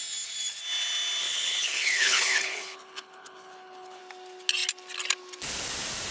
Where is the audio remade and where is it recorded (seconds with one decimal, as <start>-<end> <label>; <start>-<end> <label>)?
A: 0.0-1.2 recorded; 1.2-4.0 remade; 4.0-6.1 recorded